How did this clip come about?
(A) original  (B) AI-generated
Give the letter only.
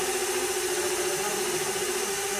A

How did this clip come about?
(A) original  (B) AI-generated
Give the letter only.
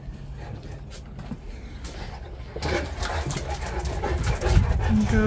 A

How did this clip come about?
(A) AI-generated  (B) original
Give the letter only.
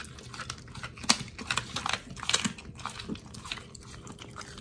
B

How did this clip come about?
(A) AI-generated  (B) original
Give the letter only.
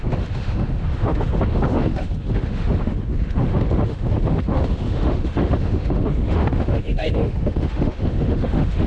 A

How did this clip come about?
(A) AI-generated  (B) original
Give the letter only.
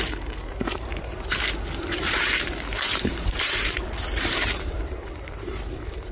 A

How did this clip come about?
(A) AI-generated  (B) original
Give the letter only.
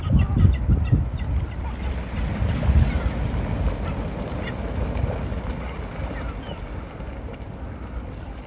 B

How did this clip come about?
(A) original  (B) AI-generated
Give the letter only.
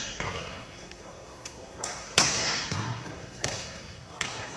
B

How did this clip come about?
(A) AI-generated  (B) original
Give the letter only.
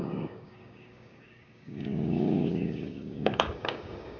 A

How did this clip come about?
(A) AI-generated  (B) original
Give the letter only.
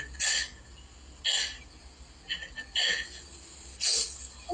B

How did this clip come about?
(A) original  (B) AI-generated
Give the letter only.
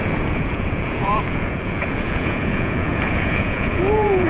B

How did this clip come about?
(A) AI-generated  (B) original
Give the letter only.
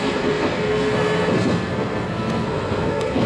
A